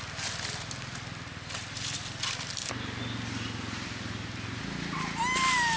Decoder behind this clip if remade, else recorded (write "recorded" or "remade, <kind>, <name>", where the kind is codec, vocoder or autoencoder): recorded